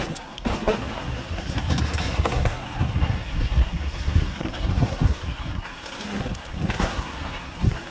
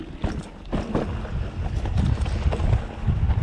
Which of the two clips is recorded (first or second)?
second